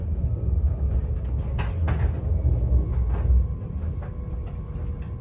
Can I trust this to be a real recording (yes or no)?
yes